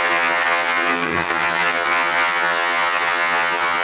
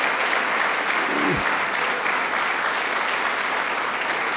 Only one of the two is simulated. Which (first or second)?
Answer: first